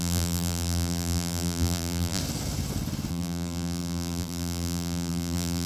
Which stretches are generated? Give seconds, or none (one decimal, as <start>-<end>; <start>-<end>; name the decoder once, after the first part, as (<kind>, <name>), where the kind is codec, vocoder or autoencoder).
0.0-2.2 (vocoder, BigVGAN v2); 3.1-5.7